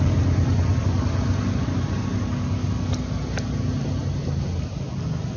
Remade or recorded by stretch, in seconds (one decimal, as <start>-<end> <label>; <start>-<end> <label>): 0.0-5.4 recorded